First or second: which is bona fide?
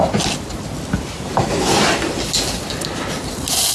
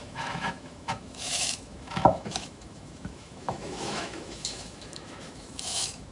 first